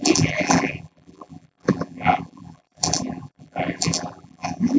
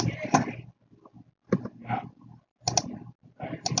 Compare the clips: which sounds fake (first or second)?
first